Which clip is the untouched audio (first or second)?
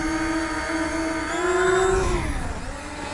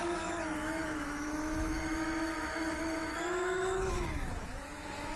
first